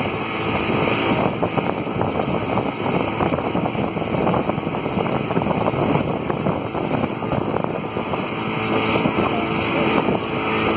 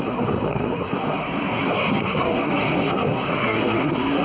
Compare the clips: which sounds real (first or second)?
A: first